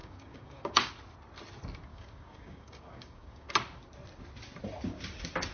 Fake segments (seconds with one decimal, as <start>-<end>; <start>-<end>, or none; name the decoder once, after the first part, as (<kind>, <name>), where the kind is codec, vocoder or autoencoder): 0.0-0.9 (codec, DAC); 1.9-3.5